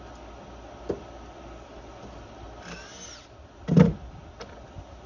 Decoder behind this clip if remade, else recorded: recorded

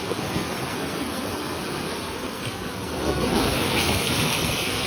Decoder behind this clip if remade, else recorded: remade, codec, SNAC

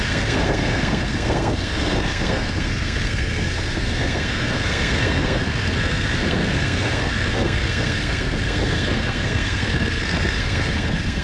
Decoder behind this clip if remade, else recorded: remade, codec, SNAC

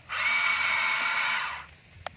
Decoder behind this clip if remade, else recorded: recorded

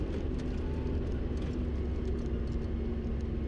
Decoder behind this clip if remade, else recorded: recorded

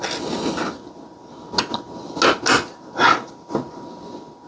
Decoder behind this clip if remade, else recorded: recorded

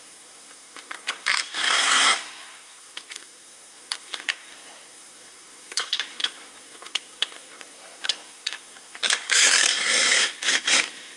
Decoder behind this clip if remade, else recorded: remade, codec, SNAC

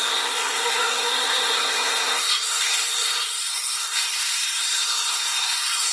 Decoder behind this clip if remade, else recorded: remade, codec, SNAC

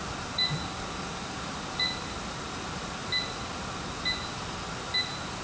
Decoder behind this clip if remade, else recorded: recorded